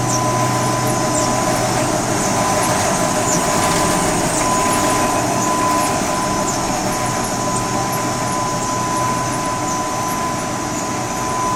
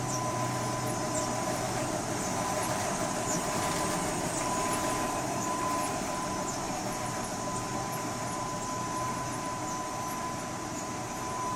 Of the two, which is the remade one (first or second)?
second